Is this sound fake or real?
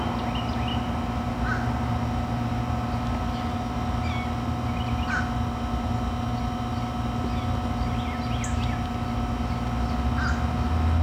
real